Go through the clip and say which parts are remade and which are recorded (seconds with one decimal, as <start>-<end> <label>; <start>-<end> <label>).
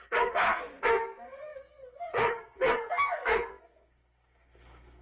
0.0-5.0 remade